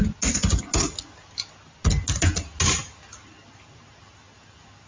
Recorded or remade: recorded